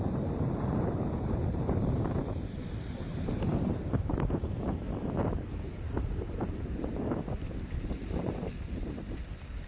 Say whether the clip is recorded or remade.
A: remade